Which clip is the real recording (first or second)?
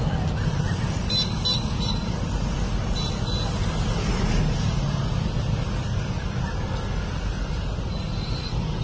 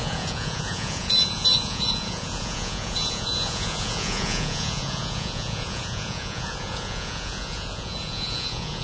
first